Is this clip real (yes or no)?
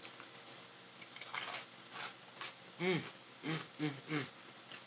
yes